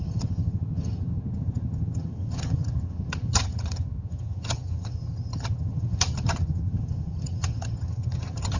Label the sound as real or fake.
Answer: fake